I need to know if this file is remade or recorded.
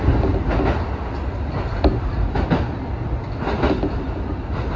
recorded